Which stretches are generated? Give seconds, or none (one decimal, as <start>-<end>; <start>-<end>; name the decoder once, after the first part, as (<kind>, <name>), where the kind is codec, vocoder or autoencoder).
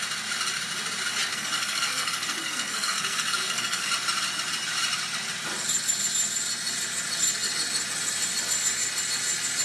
1.3-3.9 (codec, SNAC)